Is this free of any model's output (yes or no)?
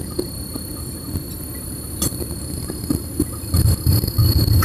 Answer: yes